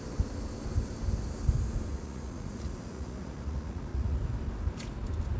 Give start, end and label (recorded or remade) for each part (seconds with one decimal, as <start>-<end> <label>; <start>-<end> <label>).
0.0-1.9 recorded; 1.9-4.2 remade; 4.2-5.4 recorded